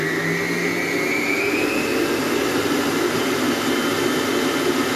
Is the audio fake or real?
real